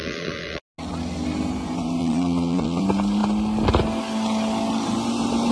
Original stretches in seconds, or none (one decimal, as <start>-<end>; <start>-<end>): 0.6-2.0; 2.8-5.5